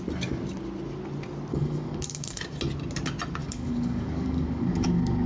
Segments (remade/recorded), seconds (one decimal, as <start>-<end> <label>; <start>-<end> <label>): 0.0-1.5 recorded; 1.5-2.4 remade; 2.4-3.4 recorded; 3.4-5.3 remade